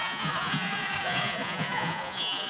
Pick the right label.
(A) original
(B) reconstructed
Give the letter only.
B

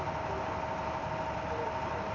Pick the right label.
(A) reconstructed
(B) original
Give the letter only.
B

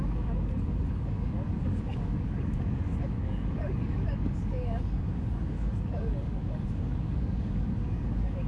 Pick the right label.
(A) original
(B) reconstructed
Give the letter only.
B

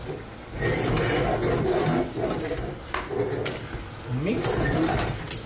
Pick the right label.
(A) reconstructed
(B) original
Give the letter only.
B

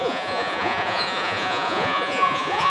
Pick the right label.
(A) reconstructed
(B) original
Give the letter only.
A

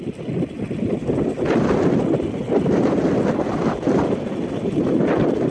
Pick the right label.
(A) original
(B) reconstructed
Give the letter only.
A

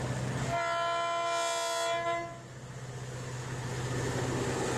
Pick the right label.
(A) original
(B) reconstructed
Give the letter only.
A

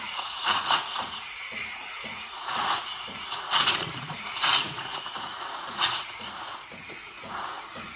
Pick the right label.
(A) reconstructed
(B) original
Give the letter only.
A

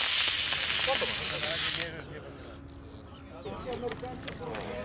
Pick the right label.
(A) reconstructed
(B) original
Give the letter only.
B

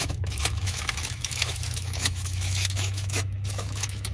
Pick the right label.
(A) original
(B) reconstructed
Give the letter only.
B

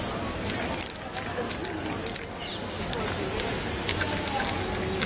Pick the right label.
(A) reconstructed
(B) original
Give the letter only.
B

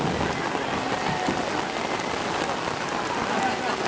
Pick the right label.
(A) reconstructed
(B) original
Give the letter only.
B